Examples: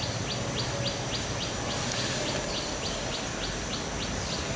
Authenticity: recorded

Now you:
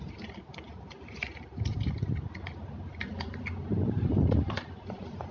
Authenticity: recorded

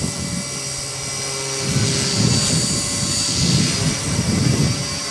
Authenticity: recorded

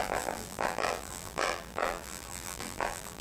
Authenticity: remade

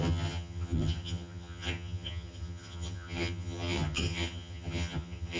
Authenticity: remade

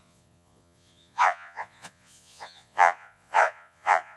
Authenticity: remade